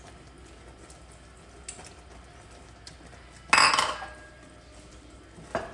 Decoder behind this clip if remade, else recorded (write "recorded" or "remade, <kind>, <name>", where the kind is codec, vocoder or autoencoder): recorded